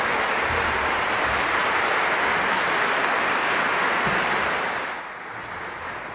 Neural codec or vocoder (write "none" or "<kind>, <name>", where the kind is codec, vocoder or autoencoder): none